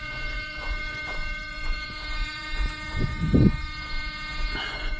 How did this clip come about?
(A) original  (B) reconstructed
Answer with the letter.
B